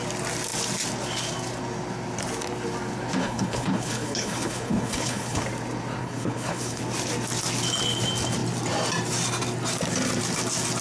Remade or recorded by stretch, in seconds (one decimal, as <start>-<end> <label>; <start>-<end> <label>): 0.0-3.2 recorded; 3.2-5.4 remade; 5.4-6.0 recorded; 6.0-6.8 remade; 6.8-10.8 recorded